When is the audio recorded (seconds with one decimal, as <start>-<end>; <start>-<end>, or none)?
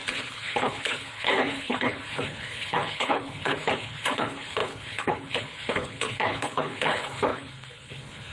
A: none